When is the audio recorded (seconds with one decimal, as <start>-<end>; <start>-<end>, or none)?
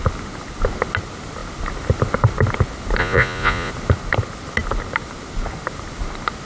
0.0-3.0; 3.7-6.5